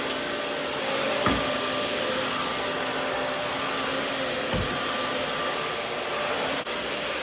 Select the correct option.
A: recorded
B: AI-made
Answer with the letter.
A